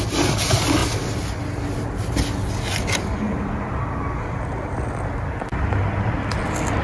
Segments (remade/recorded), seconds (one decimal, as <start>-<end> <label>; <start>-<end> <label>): 0.0-6.8 recorded

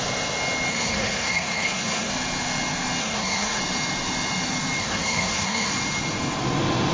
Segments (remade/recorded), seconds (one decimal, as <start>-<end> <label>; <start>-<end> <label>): 0.0-0.7 recorded; 0.7-2.1 remade; 2.1-3.0 recorded; 3.0-3.6 remade; 3.6-4.8 recorded; 4.8-5.7 remade; 5.7-6.9 recorded

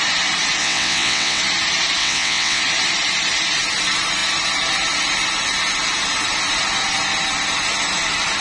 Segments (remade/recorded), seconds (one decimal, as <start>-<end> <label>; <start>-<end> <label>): 0.0-0.6 recorded; 0.6-1.4 remade; 1.4-2.0 recorded; 2.0-2.6 remade; 2.6-8.4 recorded

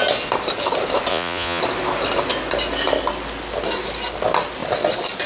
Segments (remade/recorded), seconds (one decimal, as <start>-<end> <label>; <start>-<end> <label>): 0.0-1.1 recorded; 1.1-1.6 remade; 1.6-5.3 recorded

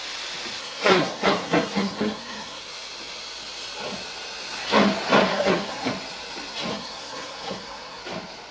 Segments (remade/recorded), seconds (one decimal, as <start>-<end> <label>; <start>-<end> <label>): 0.0-0.6 recorded; 0.6-2.6 remade; 2.6-5.3 recorded; 5.3-5.9 remade; 5.9-6.7 recorded; 6.7-8.0 remade; 8.0-8.5 recorded

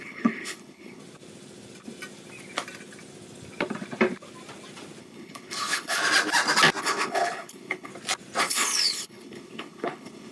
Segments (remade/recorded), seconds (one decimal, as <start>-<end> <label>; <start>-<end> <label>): 0.0-1.0 remade; 1.0-5.0 recorded; 5.0-6.0 remade; 6.0-6.8 recorded; 6.8-7.9 remade; 7.9-8.4 recorded; 8.4-10.3 remade

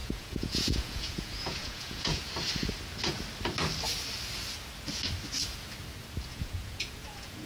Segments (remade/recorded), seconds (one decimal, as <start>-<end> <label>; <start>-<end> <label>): 0.0-2.2 remade; 2.2-6.3 recorded; 6.3-7.5 remade

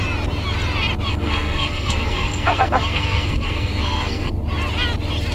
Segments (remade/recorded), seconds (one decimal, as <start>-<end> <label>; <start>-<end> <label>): 0.0-1.1 recorded; 1.1-4.3 remade; 4.3-5.3 recorded